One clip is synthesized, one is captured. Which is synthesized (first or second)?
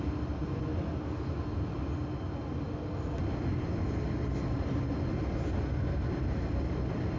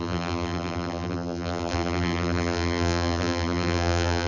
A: second